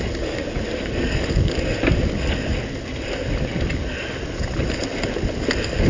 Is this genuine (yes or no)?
yes